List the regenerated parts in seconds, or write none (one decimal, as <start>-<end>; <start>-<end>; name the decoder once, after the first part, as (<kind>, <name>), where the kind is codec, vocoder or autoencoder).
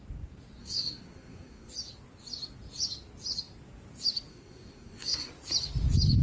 0.6-1.7 (codec, SNAC); 4.3-5.3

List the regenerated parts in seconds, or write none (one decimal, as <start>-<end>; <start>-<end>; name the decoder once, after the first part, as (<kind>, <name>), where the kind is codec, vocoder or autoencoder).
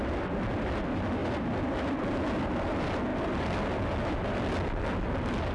none